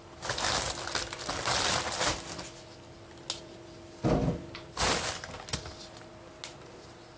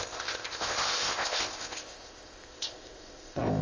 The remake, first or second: second